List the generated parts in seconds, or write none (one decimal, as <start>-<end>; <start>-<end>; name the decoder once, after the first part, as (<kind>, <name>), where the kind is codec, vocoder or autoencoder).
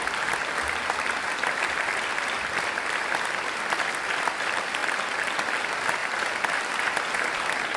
0.0-4.8 (vocoder, BigVGAN v2); 5.6-6.0; 6.6-7.8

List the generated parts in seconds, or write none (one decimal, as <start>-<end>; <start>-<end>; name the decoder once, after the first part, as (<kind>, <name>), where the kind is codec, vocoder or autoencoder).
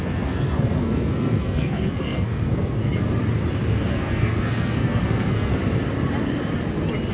0.0-2.8 (codec, SNAC); 3.7-5.5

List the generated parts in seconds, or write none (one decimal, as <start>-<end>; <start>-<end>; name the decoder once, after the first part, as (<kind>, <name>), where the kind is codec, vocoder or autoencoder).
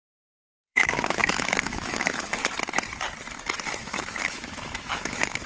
0.0-2.4 (autoencoder, DAC-VAE); 3.8-5.5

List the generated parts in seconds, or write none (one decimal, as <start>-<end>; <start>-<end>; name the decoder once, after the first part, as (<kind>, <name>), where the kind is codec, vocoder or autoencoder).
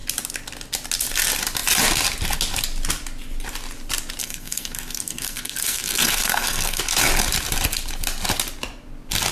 4.2-6.8 (codec, SNAC)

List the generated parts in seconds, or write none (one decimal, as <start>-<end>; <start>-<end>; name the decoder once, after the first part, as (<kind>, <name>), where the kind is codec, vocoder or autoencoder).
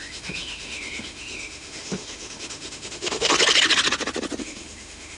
0.0-3.3 (autoencoder, DAC-VAE); 4.4-5.2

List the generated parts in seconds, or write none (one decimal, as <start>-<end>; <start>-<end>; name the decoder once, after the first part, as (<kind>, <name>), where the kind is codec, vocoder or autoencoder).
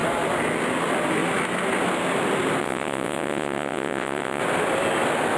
2.6-4.4 (vocoder, WaveNeXt)